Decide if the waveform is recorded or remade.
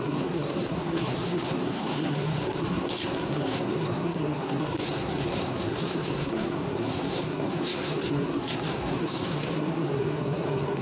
remade